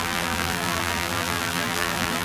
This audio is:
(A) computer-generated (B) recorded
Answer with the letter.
A